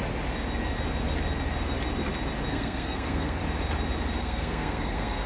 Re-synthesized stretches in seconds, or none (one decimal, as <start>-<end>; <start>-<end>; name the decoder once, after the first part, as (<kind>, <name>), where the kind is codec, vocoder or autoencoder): 2.5-3.4 (codec, SNAC); 4.2-5.3